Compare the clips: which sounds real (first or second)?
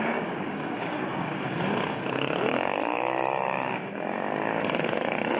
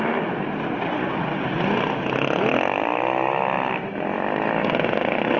second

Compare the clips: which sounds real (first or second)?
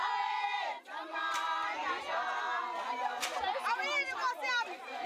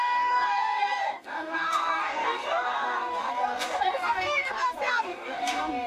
first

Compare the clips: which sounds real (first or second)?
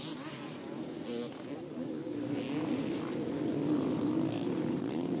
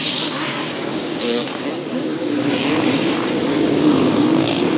first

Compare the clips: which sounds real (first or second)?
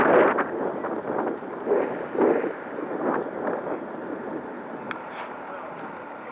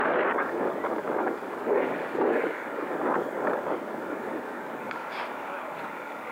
first